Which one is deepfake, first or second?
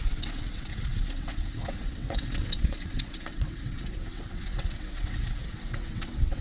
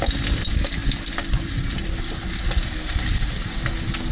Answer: first